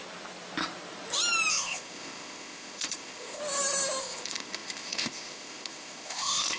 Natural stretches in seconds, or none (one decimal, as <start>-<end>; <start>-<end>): 0.0-1.5; 3.4-4.0